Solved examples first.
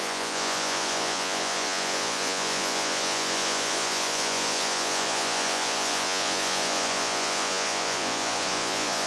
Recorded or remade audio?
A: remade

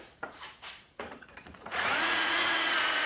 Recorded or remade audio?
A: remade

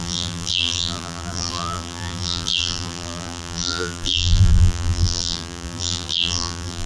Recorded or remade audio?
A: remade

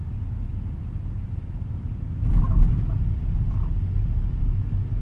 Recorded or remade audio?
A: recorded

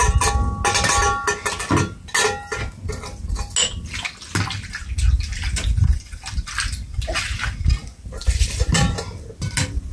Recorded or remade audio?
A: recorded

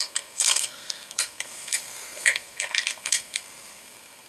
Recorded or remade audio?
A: remade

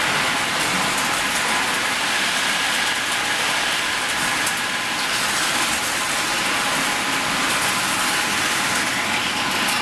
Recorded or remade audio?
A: recorded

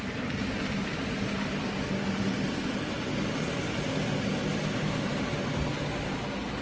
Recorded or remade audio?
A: recorded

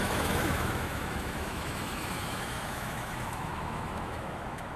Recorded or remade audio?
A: remade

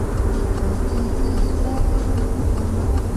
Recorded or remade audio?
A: recorded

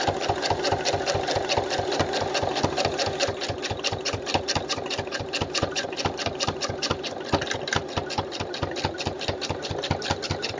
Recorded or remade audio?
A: recorded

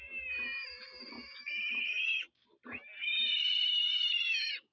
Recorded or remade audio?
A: recorded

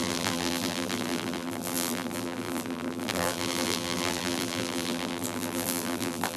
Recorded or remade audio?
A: remade